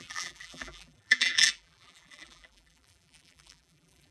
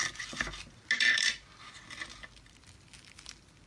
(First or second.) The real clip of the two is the second